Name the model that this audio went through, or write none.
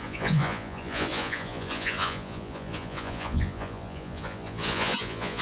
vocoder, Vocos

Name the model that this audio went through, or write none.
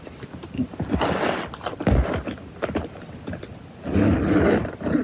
none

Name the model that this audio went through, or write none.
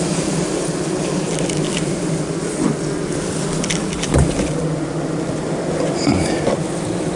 none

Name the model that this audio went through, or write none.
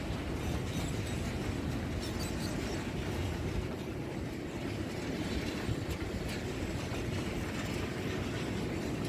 none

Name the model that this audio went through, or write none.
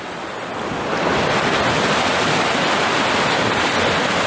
none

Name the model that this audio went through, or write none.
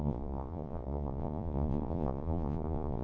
vocoder, Vocos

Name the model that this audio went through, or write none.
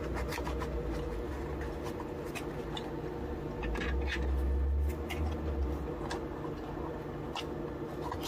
none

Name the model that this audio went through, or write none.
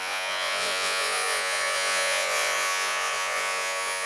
vocoder, Vocos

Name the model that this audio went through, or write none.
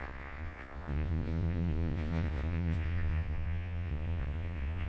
vocoder, Vocos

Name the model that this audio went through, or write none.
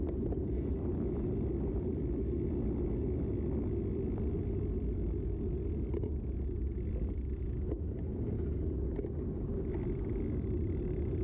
none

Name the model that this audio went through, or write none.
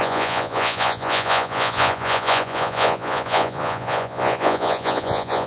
vocoder, Vocos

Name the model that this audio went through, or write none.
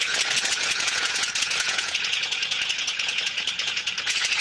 vocoder, Vocos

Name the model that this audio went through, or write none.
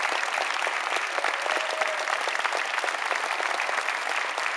none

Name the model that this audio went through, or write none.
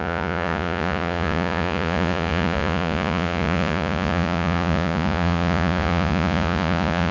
vocoder, Vocos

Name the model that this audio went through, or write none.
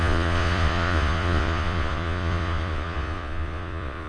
vocoder, Vocos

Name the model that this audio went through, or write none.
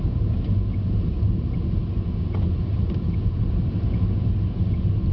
none